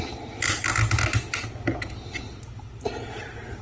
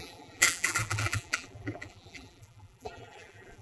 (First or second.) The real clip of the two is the first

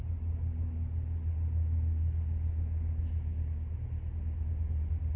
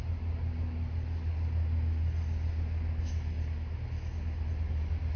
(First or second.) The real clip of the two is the second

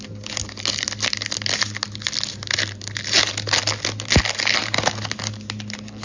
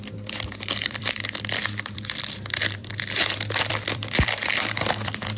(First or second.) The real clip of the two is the first